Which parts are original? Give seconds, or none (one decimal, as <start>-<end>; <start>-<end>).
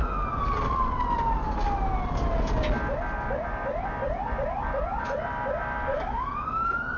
0.0-5.9